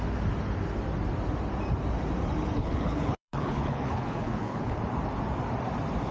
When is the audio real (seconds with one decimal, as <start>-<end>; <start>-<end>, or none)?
0.0-2.6; 4.8-6.1

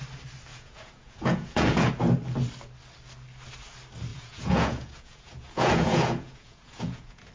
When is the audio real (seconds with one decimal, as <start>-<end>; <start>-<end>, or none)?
0.0-0.5; 1.9-4.1

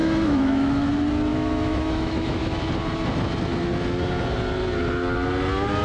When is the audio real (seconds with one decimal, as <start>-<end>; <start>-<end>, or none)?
0.9-1.3; 2.6-5.8

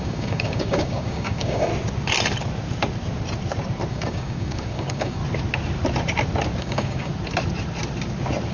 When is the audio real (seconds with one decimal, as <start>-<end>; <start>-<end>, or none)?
1.7-3.9; 5.2-6.6; 7.1-8.5

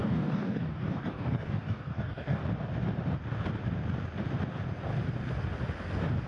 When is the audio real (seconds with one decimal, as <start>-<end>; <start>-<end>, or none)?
2.4-6.3

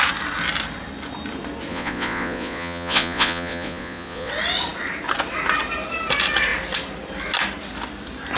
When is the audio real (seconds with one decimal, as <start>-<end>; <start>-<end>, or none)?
0.0-1.7; 4.3-8.4

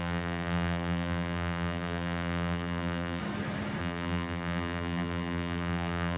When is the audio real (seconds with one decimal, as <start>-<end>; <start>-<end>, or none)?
3.2-3.8

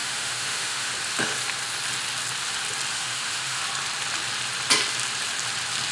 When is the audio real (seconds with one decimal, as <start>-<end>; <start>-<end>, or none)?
0.9-2.9; 3.6-5.9